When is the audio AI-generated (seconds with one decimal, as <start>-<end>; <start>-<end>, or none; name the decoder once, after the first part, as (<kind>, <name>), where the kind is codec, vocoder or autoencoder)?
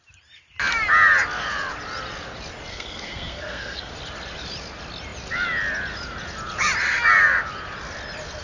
2.7-3.9 (codec, SNAC)